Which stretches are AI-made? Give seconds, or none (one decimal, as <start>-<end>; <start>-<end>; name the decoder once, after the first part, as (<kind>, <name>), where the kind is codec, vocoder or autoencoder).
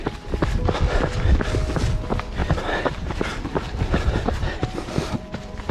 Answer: 2.4-5.7 (vocoder, BigVGAN v2)